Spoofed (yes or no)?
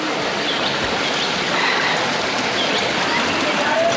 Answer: no